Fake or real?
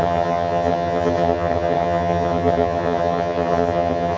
fake